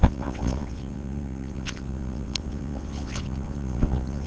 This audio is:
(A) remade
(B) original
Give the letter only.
A